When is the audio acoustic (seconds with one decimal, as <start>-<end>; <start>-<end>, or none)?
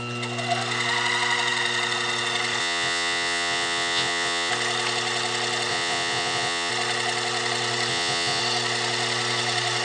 0.0-2.6; 4.5-5.7; 6.7-7.9; 8.4-9.8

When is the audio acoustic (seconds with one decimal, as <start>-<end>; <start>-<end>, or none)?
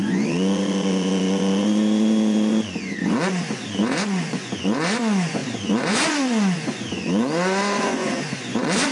none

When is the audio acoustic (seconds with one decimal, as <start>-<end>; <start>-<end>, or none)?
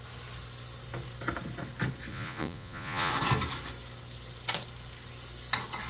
0.0-2.1; 3.1-5.9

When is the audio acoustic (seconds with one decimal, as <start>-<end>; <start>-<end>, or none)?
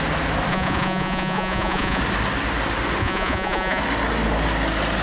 0.0-0.5; 2.0-3.0; 3.8-5.0